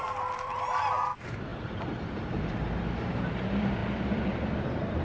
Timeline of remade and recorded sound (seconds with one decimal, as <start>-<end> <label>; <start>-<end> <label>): 0.0-5.0 remade